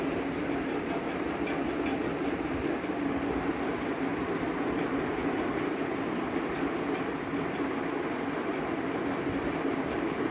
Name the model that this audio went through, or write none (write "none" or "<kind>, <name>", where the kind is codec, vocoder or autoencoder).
none